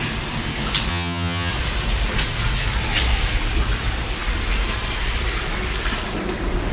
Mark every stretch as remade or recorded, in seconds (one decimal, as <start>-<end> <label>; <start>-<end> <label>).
0.0-0.9 recorded; 0.9-1.5 remade; 1.5-6.7 recorded

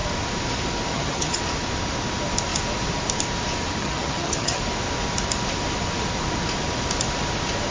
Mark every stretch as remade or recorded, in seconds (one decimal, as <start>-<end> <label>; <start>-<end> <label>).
0.0-0.9 recorded; 0.9-1.4 remade; 1.4-3.8 recorded; 3.8-4.6 remade; 4.6-7.7 recorded

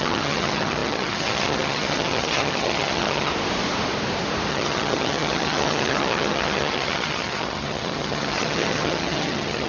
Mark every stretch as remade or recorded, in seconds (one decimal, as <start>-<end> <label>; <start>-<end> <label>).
0.0-3.3 remade; 3.3-4.5 recorded; 4.5-9.7 remade